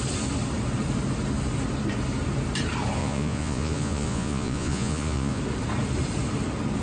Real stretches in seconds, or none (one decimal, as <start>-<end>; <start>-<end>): 0.0-3.0; 5.4-6.8